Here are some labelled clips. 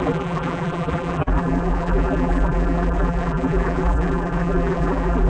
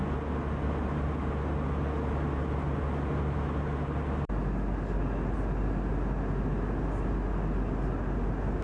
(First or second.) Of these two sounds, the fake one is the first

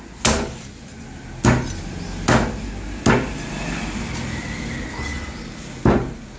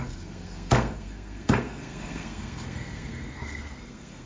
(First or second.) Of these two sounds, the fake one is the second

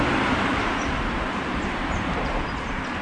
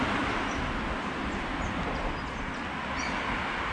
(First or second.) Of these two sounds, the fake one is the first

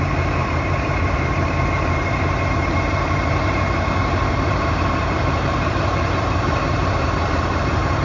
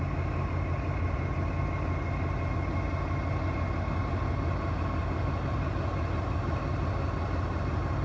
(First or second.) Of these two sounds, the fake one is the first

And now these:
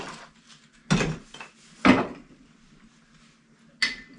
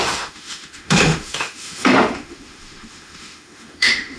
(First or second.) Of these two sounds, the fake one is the second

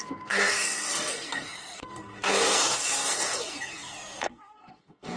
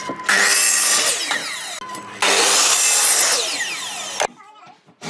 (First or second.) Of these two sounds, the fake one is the first